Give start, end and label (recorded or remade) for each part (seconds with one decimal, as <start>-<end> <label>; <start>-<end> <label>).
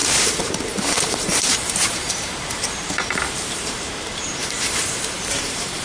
0.0-5.8 remade